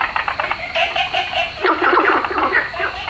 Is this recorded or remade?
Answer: remade